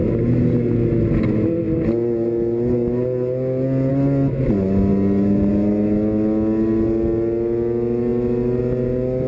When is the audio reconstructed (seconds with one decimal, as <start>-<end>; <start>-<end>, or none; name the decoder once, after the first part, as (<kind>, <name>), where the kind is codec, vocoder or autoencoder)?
none